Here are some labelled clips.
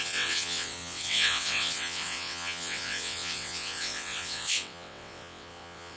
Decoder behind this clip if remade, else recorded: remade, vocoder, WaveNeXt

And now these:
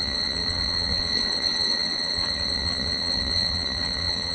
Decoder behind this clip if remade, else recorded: remade, vocoder, WaveNeXt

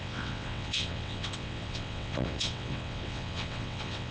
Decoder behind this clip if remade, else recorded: remade, vocoder, WaveNeXt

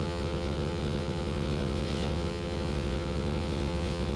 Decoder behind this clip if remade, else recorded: remade, vocoder, WaveNeXt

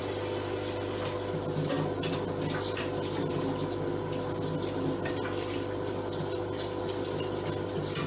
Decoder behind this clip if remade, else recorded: recorded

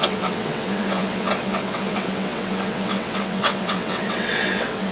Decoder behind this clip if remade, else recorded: remade, vocoder, WaveNeXt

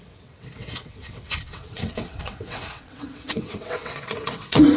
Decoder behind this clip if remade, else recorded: remade, vocoder, WaveNeXt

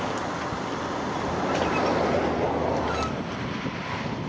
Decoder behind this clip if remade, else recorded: recorded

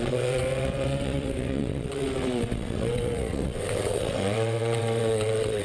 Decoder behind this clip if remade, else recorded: remade, vocoder, WaveNeXt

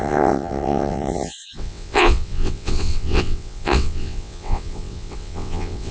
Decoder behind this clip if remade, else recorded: remade, vocoder, WaveNeXt